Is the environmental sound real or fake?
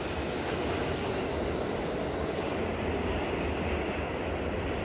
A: real